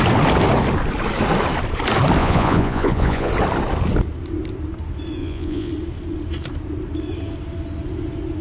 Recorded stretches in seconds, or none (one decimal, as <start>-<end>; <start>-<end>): 0.0-2.2; 3.3-5.2; 5.7-8.4